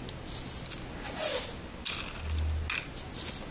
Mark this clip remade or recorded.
recorded